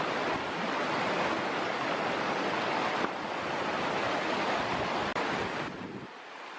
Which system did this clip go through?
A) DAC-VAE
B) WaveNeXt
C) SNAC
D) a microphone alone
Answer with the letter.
D